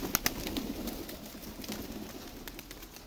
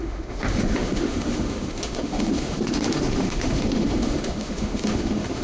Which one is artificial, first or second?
second